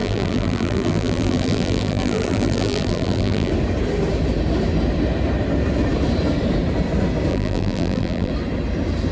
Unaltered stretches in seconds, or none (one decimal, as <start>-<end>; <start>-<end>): 3.5-7.3; 8.3-9.1